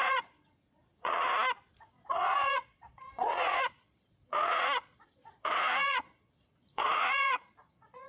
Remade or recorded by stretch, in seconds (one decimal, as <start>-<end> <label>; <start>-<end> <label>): 0.0-1.3 remade; 1.3-1.8 recorded; 1.8-8.1 remade